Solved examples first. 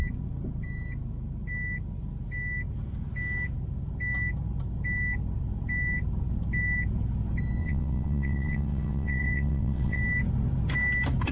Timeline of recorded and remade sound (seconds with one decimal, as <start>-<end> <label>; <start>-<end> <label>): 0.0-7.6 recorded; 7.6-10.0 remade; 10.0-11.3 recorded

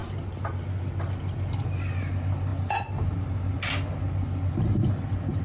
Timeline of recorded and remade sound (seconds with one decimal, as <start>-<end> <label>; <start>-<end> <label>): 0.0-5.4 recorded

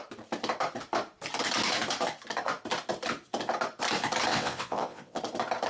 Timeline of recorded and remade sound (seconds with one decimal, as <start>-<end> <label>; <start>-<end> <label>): 0.0-4.3 recorded; 4.3-5.2 remade; 5.2-5.7 recorded

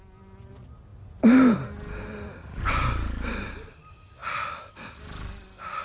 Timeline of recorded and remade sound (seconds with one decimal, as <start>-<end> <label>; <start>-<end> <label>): 0.0-5.8 recorded